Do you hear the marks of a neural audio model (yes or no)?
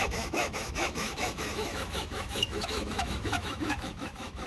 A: yes